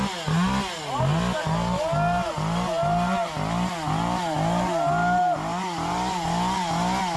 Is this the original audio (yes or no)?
yes